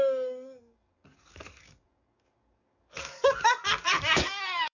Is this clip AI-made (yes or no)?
yes